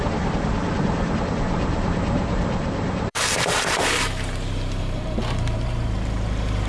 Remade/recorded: remade